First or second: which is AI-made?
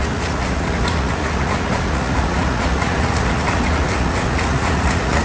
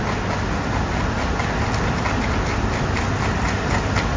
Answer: first